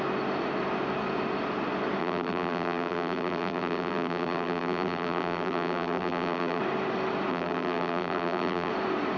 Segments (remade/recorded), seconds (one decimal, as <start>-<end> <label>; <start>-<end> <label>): 0.0-2.0 recorded; 2.0-6.6 remade; 6.6-7.3 recorded; 7.3-8.7 remade; 8.7-9.2 recorded